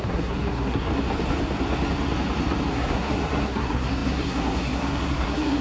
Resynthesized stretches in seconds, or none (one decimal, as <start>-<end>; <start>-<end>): 0.0-0.9; 2.7-5.6